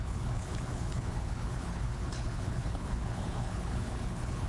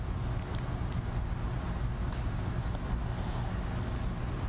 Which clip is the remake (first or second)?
first